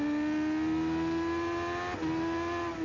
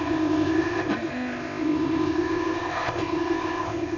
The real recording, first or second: first